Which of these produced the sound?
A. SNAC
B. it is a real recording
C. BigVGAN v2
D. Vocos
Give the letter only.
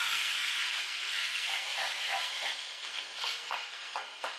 A